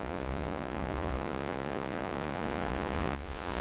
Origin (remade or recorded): remade